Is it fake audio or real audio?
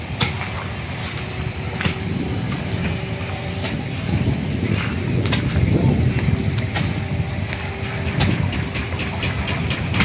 real